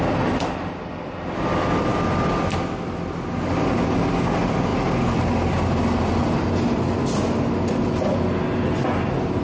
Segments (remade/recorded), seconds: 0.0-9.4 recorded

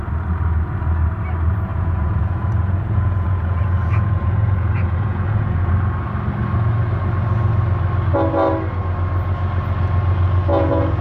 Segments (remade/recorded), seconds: 0.0-1.7 recorded; 1.7-5.7 remade; 5.7-10.5 recorded; 10.5-11.0 remade